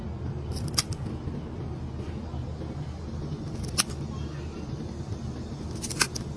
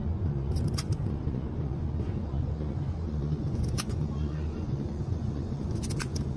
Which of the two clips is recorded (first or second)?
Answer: first